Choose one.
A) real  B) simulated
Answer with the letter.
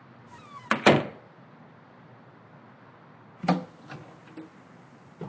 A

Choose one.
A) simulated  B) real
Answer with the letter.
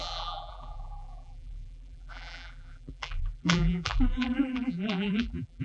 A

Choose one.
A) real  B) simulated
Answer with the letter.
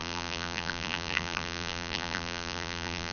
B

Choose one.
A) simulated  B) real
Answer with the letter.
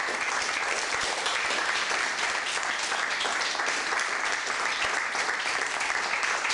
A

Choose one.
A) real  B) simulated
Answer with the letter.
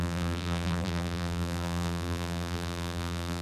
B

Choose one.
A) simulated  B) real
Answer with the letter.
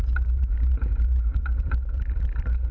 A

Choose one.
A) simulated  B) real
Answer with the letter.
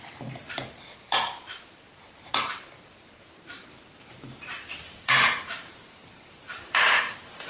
A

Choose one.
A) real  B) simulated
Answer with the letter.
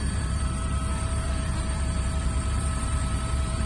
B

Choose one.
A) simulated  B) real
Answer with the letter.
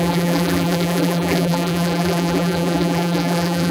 A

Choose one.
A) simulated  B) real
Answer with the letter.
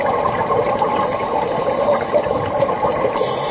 A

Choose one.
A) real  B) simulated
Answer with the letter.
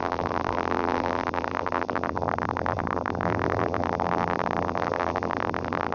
B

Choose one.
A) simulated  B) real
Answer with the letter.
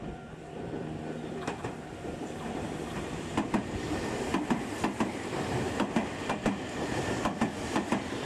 A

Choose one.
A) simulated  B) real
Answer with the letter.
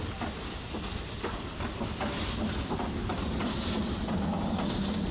B